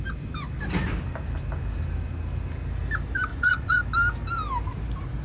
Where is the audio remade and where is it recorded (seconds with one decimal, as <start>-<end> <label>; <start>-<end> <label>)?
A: 0.0-3.3 recorded; 3.3-3.8 remade; 3.8-5.2 recorded